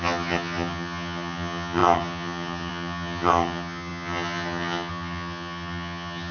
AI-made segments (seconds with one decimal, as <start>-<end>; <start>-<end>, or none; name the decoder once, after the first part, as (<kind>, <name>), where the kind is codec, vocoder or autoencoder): 0.0-6.3 (vocoder, HiFi-GAN)